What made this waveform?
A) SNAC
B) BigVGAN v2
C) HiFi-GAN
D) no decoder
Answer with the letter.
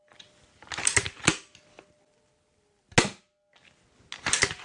D